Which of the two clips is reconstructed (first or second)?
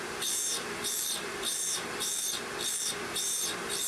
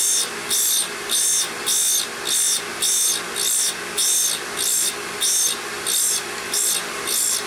first